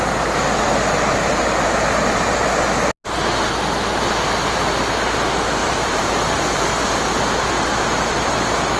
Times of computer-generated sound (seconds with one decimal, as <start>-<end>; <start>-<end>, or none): 5.6-6.4